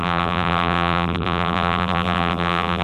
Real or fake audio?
fake